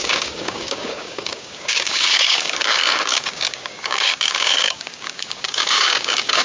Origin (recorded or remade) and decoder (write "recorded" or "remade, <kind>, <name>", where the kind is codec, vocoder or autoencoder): remade, codec, DAC